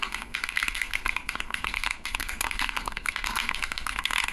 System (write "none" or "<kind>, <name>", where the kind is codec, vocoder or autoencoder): codec, SNAC